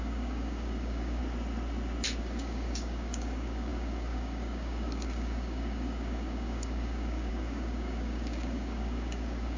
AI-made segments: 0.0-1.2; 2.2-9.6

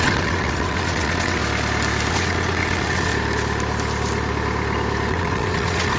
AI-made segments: 0.0-1.4; 2.1-3.1; 5.1-6.0